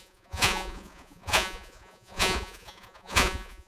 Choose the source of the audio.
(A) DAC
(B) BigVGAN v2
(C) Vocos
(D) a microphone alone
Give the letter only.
C